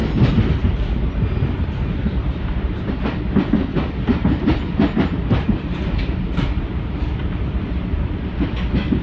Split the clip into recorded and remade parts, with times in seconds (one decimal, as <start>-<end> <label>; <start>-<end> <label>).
0.0-1.0 recorded; 1.0-9.0 remade